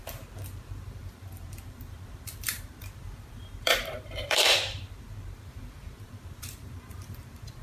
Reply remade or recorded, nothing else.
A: remade